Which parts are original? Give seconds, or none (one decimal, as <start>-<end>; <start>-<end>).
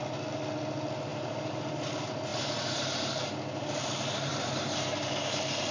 0.0-1.1; 1.9-2.3; 3.1-4.3; 5.1-5.7